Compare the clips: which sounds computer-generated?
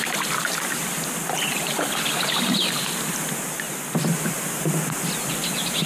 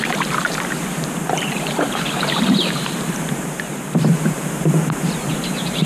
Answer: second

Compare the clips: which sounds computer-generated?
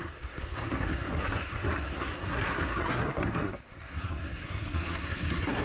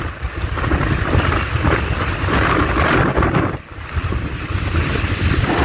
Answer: first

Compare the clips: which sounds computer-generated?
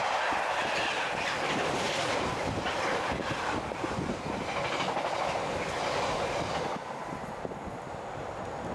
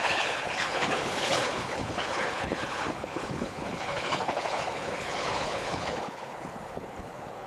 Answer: second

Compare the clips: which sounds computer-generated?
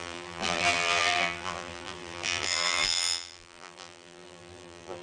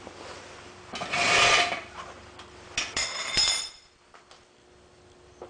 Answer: first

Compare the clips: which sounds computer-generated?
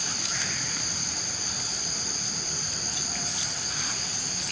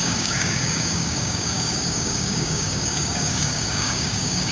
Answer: second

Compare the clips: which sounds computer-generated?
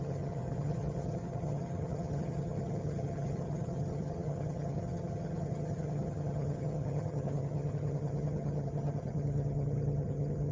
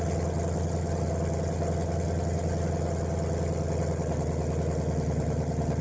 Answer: first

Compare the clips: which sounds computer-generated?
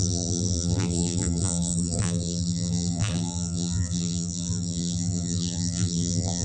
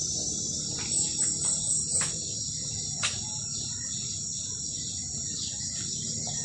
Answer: first